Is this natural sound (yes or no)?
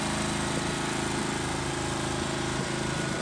yes